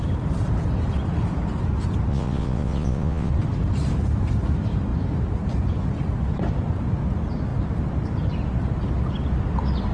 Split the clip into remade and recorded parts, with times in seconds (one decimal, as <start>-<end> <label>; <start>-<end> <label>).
0.0-2.1 recorded; 2.1-3.3 remade; 3.3-9.9 recorded